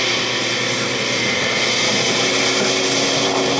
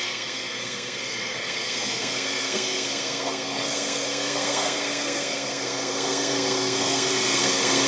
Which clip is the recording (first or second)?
first